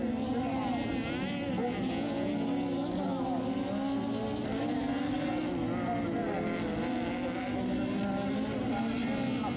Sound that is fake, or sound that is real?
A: real